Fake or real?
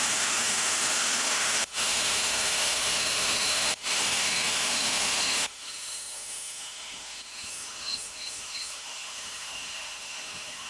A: fake